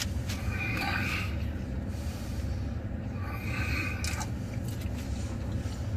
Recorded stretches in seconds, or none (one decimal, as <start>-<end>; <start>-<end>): 0.0-0.4; 1.3-6.0